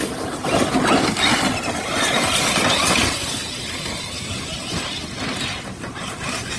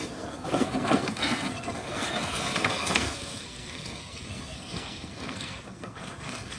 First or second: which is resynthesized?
second